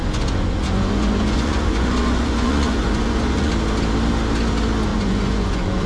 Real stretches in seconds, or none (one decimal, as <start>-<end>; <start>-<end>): 3.5-4.9